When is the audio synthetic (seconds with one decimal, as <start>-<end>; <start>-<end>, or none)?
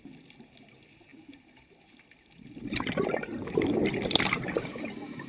none